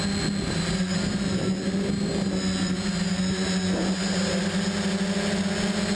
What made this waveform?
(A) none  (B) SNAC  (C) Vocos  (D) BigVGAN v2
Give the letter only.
A